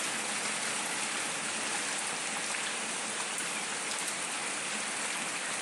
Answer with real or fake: real